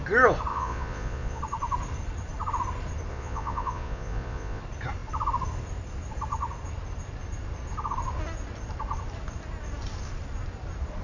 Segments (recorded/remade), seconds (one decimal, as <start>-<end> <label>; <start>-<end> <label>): 0.0-0.5 recorded; 0.5-1.4 remade; 1.4-3.1 recorded; 3.1-4.6 remade; 4.6-11.0 recorded